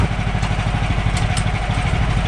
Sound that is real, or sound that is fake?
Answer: real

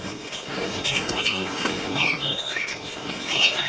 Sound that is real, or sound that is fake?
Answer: fake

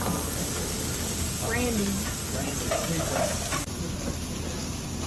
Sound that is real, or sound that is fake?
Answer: real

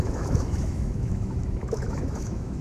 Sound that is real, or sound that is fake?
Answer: fake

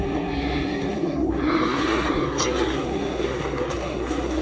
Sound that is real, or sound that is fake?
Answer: fake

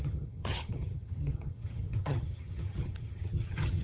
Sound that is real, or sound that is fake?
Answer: fake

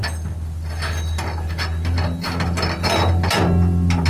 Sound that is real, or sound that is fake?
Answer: real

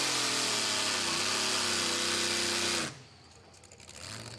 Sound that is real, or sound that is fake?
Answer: real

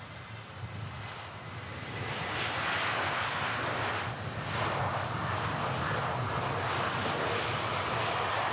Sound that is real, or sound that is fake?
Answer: real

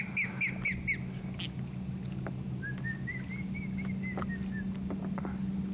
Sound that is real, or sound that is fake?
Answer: real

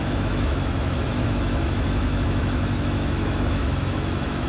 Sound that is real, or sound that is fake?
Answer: fake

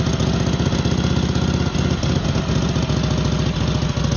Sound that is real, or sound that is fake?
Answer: real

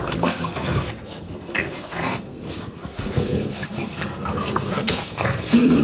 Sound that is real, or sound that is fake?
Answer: fake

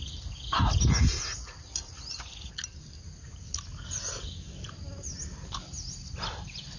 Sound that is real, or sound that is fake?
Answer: real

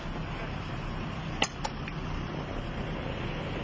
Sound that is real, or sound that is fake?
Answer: real